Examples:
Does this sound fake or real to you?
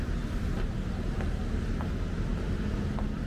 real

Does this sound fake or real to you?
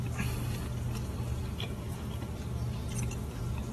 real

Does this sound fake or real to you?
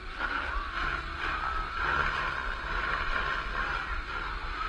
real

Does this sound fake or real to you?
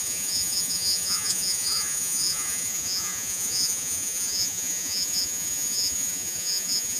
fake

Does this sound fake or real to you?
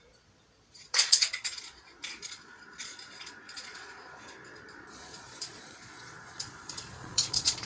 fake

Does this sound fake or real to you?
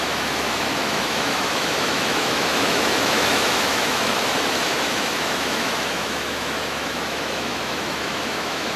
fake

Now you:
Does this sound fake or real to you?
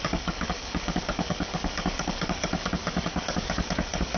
fake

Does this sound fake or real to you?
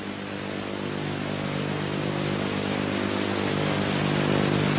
real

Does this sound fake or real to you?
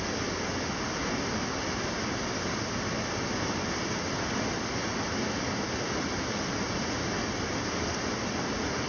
real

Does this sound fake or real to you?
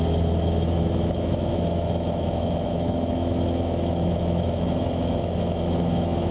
fake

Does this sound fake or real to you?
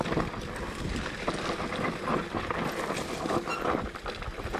real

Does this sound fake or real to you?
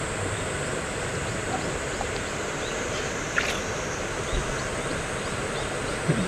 real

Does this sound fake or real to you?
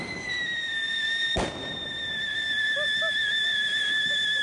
real